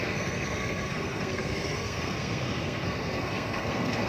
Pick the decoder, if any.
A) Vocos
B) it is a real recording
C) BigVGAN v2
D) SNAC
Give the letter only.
D